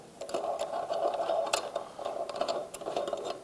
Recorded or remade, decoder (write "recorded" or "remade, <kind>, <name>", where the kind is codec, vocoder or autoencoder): recorded